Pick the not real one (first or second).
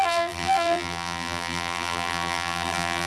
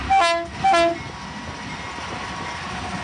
first